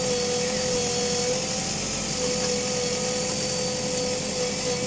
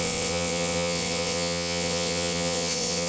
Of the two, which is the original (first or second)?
first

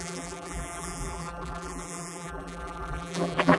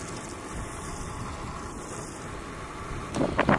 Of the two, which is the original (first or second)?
second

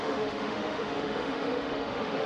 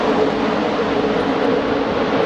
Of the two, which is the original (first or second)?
second